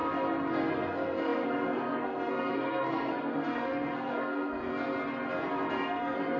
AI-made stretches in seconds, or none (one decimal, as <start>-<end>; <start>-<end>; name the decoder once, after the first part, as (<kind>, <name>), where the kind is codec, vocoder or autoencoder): 0.7-4.7 (codec, SNAC); 5.7-6.4